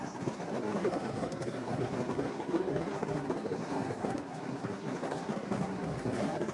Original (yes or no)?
no